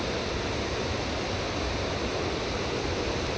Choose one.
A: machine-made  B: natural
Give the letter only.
B